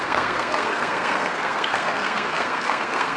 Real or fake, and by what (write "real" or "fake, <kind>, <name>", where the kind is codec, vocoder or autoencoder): fake, codec, SNAC